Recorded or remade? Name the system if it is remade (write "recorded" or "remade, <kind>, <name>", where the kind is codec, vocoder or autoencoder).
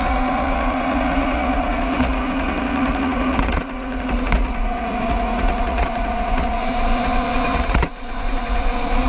remade, vocoder, Vocos